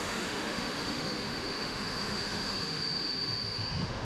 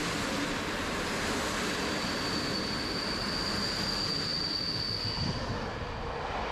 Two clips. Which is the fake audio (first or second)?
first